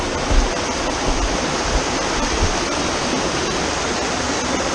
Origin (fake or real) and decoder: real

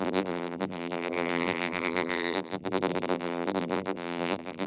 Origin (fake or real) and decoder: fake, vocoder, BigVGAN v2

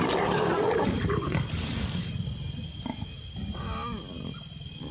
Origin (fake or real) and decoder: real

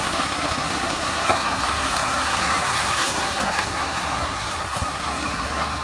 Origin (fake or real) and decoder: fake, codec, SNAC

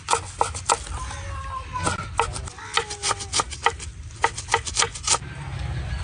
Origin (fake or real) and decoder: real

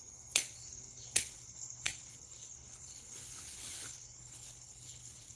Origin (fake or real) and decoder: fake, codec, HILCodec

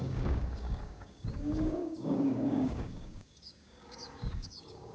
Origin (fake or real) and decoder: fake, codec, DAC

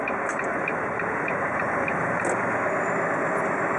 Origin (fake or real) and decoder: real